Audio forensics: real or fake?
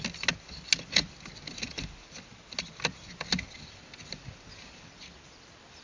real